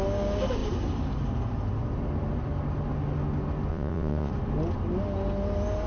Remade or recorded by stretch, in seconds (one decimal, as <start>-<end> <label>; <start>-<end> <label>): 0.0-3.7 recorded; 3.7-4.3 remade; 4.3-5.9 recorded